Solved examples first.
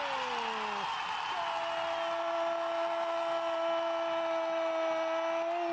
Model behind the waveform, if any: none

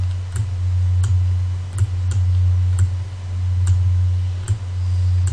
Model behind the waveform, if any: none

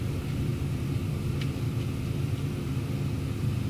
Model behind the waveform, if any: vocoder, BigVGAN v2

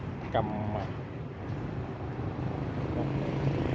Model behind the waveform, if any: vocoder, BigVGAN v2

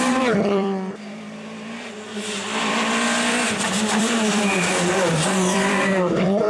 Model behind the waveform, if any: vocoder, BigVGAN v2